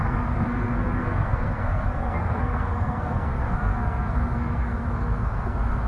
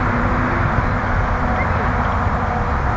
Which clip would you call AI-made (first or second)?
first